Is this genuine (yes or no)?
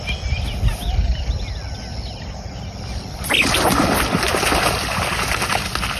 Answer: yes